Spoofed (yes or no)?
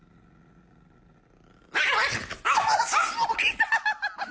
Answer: no